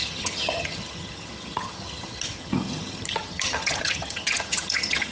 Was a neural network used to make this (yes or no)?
yes